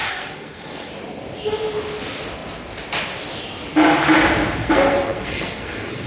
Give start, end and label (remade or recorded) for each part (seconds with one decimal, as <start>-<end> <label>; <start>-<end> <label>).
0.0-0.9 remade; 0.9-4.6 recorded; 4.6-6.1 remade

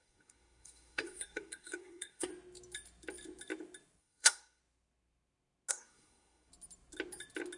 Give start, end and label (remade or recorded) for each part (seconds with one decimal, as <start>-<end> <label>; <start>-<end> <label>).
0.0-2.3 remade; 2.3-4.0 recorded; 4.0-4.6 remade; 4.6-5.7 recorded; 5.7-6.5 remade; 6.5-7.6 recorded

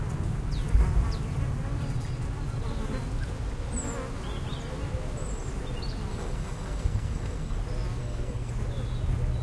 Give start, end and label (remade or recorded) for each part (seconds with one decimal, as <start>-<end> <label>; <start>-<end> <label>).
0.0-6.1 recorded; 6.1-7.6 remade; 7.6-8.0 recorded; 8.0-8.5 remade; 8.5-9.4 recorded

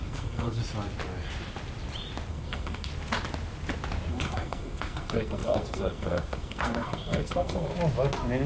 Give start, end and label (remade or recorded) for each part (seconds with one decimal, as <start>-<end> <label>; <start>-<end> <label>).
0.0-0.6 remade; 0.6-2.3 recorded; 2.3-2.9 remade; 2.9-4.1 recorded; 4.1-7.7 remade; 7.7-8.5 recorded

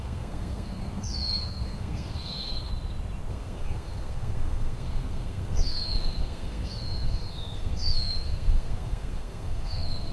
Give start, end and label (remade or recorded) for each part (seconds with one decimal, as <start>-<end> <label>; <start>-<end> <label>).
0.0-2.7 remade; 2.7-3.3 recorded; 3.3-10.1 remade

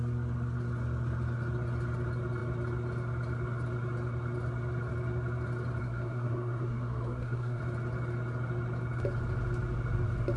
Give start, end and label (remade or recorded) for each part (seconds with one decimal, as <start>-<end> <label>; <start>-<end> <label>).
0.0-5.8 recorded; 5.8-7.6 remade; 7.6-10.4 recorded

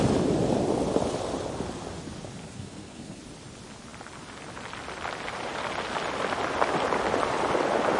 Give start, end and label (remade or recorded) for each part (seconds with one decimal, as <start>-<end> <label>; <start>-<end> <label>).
0.0-2.4 recorded; 2.4-3.2 remade; 3.2-8.0 recorded

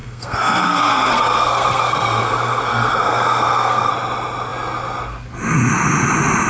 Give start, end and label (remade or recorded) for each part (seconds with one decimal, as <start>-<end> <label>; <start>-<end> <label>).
0.0-3.9 remade; 3.9-6.5 recorded